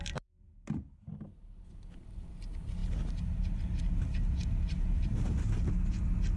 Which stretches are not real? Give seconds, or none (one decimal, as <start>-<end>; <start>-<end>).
none